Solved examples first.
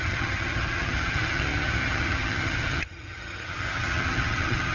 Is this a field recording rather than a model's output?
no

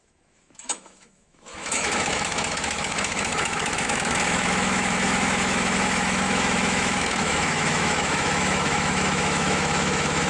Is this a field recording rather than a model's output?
no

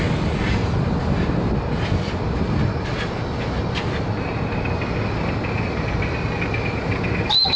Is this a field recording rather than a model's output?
yes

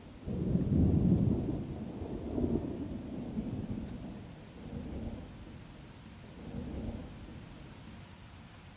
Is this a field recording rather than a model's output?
yes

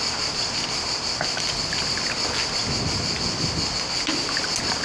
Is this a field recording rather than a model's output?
yes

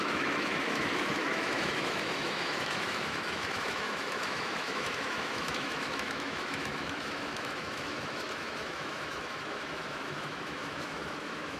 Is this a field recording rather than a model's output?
no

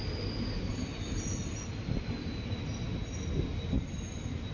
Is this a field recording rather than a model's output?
yes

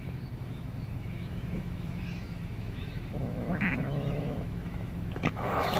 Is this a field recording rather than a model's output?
no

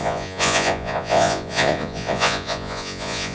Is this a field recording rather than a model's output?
no